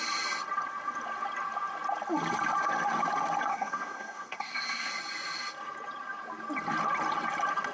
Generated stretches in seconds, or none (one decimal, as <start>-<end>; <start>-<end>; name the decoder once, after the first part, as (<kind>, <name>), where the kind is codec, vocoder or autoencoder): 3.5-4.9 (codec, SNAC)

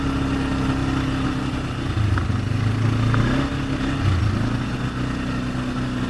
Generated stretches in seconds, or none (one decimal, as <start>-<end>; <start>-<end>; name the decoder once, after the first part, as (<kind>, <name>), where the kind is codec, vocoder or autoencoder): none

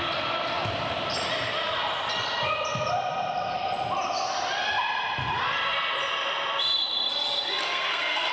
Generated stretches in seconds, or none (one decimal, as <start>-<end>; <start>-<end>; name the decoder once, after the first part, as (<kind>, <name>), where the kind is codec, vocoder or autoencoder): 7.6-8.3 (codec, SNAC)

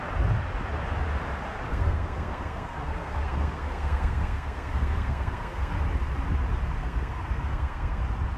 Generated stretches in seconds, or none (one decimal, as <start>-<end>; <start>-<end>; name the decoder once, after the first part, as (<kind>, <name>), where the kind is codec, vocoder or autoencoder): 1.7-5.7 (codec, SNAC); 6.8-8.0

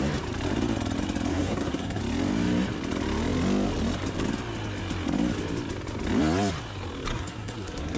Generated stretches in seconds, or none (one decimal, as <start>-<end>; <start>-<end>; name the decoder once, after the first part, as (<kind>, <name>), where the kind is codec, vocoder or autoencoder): 1.3-2.0 (codec, SNAC); 7.1-8.0